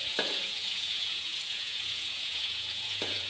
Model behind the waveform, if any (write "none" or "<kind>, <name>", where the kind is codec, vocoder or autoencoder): vocoder, Vocos